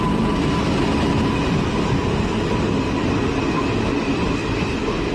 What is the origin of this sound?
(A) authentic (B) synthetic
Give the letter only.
A